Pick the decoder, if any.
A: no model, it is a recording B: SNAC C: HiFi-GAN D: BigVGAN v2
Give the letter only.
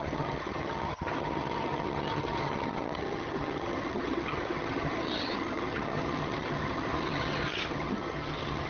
C